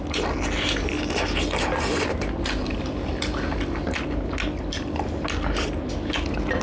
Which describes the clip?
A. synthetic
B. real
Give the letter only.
B